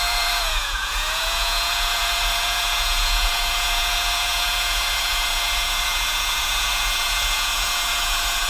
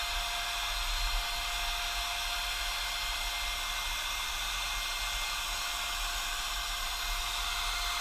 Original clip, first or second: second